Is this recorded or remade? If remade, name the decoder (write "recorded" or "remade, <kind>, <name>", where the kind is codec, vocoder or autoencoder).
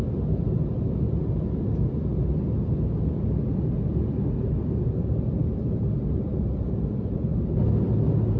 recorded